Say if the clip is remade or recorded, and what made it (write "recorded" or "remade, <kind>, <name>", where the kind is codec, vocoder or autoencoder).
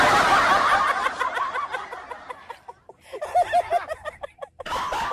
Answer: recorded